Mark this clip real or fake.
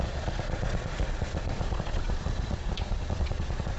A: fake